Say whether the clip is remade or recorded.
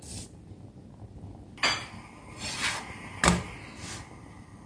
recorded